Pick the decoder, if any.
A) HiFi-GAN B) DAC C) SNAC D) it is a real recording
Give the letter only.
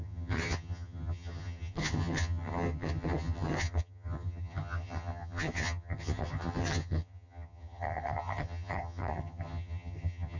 A